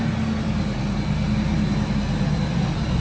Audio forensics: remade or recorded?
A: recorded